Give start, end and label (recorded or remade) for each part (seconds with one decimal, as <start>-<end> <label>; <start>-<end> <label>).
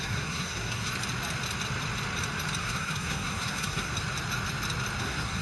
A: 0.0-0.9 remade; 0.9-2.6 recorded; 2.6-3.9 remade; 3.9-5.0 recorded; 5.0-5.4 remade